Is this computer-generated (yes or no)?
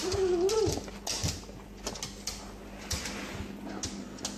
no